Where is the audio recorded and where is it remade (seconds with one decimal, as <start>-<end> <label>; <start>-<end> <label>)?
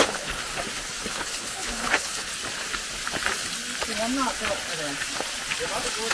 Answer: 0.0-0.4 remade; 0.4-1.1 recorded; 1.1-2.3 remade; 2.3-6.1 recorded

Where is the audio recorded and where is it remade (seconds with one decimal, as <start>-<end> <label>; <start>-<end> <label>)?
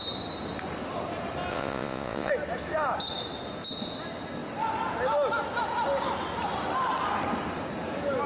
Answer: 0.0-1.5 recorded; 1.5-2.3 remade; 2.3-8.3 recorded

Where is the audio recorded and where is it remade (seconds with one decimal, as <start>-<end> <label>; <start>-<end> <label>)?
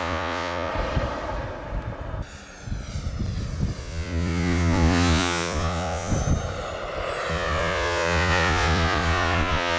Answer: 0.0-0.7 remade; 0.7-3.8 recorded; 3.8-6.1 remade; 6.1-7.3 recorded; 7.3-9.8 remade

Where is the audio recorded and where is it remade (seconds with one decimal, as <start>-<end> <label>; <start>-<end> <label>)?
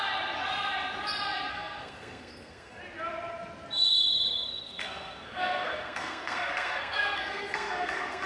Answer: 0.0-1.5 recorded; 1.5-2.8 remade; 2.8-4.1 recorded; 4.1-8.3 remade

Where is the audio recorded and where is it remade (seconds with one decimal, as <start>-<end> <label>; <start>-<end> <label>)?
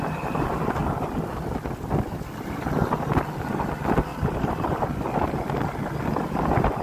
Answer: 0.0-0.8 recorded; 0.8-1.3 remade; 1.3-4.1 recorded; 4.1-4.8 remade; 4.8-6.8 recorded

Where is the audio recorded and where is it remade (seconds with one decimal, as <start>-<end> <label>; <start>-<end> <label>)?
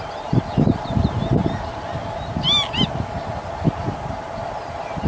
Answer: 0.0-5.1 recorded